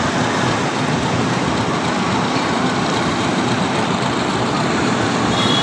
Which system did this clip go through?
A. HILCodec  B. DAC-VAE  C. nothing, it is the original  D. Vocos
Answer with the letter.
C